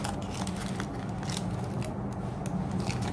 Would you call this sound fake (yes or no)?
no